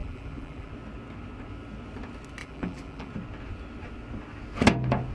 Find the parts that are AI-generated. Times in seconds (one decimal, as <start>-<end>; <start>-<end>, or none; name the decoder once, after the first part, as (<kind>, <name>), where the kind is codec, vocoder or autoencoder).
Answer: 0.0-0.7 (vocoder, BigVGAN v2); 2.4-3.1